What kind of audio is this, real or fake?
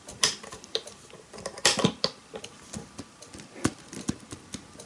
fake